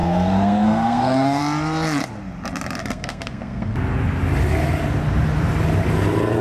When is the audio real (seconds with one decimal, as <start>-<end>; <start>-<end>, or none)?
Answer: 1.4-2.8; 3.7-6.4